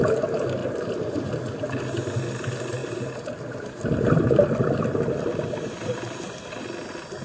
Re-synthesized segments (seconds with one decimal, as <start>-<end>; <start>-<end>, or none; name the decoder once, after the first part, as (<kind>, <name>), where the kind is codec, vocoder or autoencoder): 0.6-1.4 (vocoder, BigVGAN v2); 2.8-3.4